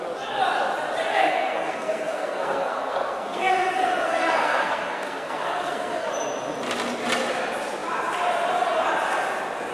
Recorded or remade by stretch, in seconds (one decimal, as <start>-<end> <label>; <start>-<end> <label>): 0.0-1.1 recorded; 1.1-6.1 remade; 6.1-9.7 recorded